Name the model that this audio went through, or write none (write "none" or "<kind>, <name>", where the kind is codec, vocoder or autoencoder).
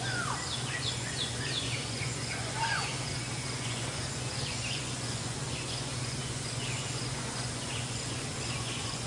vocoder, Vocos